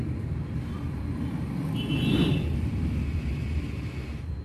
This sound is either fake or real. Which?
real